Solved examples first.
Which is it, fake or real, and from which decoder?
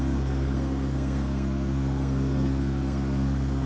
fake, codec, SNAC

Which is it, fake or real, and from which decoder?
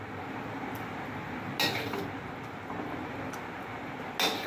real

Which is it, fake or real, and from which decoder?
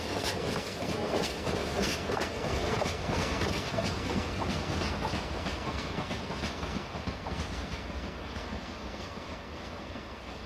fake, codec, SNAC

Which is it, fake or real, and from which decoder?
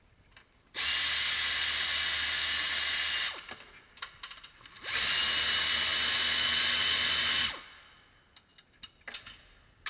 real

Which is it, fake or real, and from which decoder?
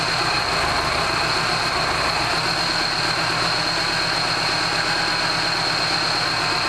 real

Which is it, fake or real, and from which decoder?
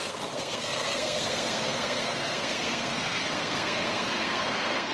fake, codec, SNAC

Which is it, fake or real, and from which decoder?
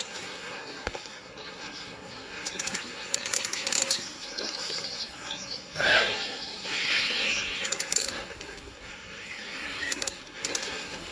fake, codec, SNAC